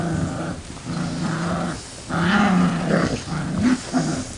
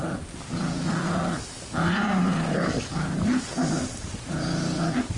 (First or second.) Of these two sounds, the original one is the first